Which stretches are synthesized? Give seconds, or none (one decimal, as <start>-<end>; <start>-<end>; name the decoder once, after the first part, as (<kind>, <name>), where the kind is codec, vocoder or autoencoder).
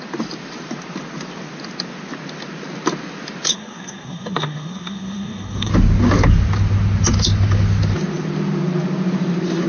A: 3.5-5.7 (codec, SNAC)